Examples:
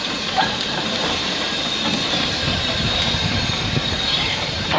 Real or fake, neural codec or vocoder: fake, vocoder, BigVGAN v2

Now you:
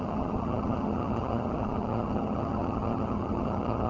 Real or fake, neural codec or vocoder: fake, vocoder, HiFi-GAN